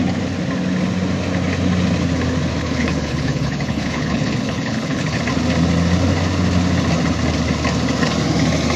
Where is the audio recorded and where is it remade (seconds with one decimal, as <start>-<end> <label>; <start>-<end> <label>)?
0.0-2.6 recorded; 2.6-5.2 remade; 5.2-8.8 recorded